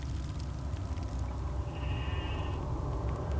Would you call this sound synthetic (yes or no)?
no